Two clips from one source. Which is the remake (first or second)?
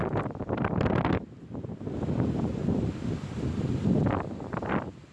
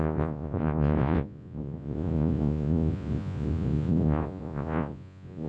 second